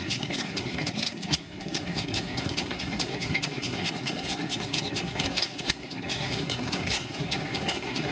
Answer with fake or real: fake